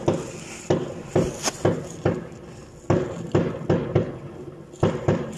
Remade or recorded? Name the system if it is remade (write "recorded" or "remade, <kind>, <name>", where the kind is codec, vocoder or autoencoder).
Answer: recorded